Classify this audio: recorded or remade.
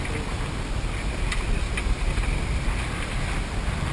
recorded